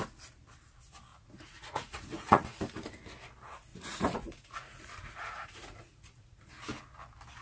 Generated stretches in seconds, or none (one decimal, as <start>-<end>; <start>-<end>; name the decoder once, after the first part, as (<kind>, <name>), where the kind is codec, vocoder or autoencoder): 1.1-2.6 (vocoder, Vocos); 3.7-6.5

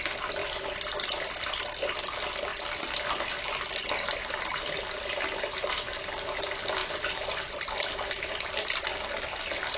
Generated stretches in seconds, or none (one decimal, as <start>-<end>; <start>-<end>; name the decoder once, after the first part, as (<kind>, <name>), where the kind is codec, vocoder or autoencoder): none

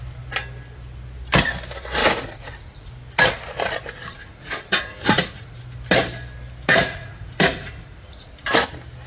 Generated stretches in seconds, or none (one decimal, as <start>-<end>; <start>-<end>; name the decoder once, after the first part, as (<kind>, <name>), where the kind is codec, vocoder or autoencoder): 2.0-2.9 (vocoder, Vocos); 4.2-5.6; 6.8-8.3